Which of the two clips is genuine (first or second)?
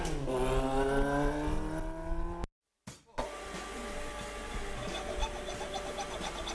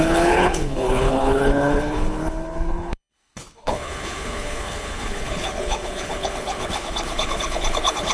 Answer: first